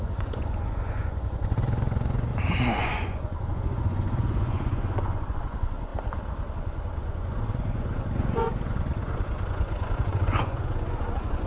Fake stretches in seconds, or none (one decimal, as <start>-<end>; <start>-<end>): 0.0-2.3; 2.8-5.9; 6.5-11.5